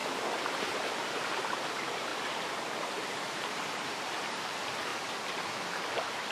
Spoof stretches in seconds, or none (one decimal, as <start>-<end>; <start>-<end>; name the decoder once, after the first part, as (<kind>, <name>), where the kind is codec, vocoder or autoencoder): 0.8-4.9 (vocoder, BigVGAN v2); 5.5-6.3